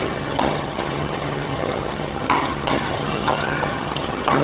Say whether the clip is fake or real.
fake